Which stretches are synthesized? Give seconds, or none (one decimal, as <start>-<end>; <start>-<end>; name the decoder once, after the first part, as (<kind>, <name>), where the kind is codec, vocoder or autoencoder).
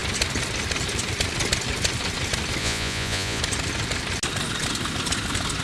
2.6-3.4 (vocoder, Vocos)